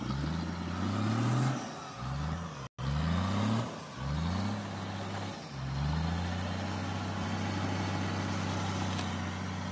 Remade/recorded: recorded